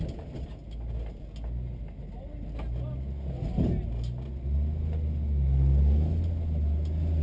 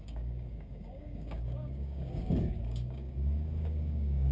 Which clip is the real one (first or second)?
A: first